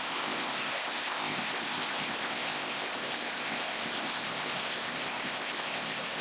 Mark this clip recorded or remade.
remade